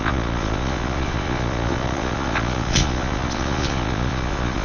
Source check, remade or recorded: remade